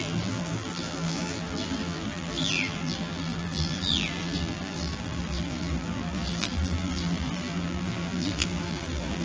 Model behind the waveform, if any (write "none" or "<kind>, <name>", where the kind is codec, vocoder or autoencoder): vocoder, BigVGAN v2